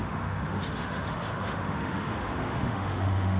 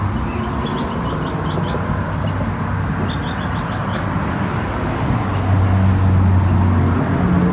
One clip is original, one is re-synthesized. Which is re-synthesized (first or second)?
first